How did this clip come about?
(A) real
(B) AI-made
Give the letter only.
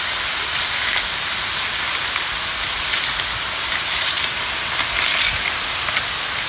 A